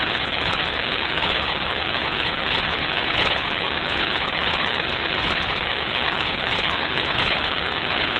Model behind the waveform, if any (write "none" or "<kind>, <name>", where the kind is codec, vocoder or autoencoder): codec, HILCodec